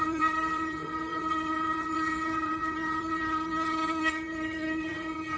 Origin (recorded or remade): remade